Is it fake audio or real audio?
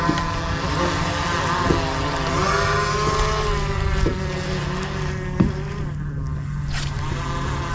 real